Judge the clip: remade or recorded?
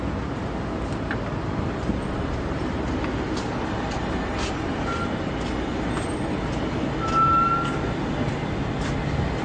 recorded